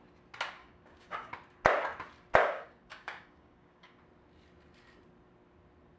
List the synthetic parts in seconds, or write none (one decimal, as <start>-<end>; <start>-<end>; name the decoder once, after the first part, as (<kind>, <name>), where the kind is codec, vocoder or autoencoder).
0.6-1.3 (codec, DAC); 2.4-4.0